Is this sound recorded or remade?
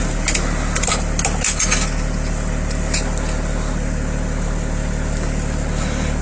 recorded